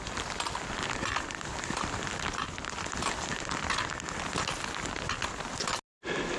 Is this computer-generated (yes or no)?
no